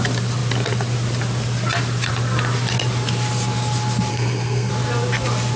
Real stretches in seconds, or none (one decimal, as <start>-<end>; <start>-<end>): 0.0-4.1; 4.7-5.6